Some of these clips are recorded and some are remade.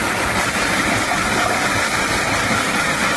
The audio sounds recorded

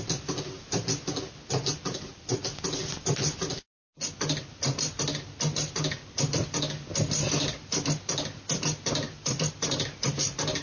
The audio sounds recorded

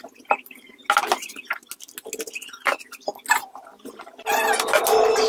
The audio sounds recorded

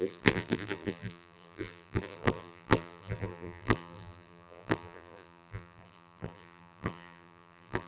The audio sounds remade